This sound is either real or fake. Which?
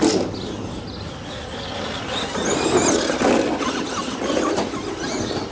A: real